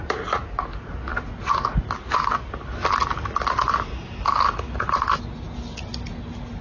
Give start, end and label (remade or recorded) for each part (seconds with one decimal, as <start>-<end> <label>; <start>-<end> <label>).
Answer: 0.0-6.6 recorded